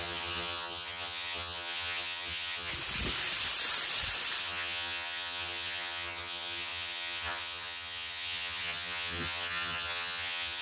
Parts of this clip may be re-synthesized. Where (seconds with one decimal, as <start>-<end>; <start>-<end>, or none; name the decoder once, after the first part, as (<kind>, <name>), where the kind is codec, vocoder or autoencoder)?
0.0-2.7 (vocoder, HiFi-GAN); 4.4-10.6